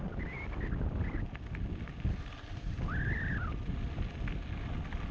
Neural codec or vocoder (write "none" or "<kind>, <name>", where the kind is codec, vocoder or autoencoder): none